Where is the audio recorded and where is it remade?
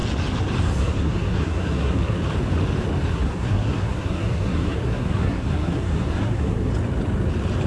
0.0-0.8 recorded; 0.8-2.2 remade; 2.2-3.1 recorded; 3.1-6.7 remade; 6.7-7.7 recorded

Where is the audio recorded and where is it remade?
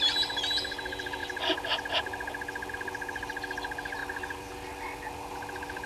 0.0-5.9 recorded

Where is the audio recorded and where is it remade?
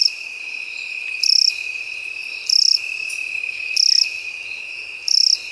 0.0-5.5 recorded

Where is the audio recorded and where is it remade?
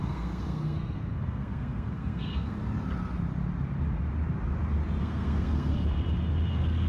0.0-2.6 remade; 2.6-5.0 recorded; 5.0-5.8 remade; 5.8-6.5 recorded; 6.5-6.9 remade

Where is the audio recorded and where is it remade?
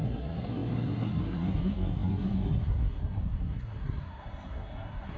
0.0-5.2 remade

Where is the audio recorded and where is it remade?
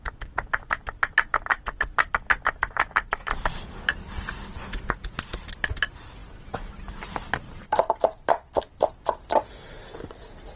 0.0-10.6 recorded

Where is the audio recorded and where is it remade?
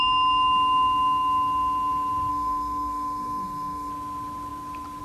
0.0-2.3 recorded; 2.3-3.9 remade; 3.9-5.0 recorded